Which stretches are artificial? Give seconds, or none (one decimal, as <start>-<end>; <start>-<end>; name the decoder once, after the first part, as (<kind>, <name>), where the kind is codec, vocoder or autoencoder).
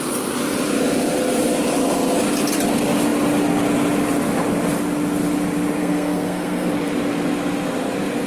5.8-6.7 (codec, SNAC)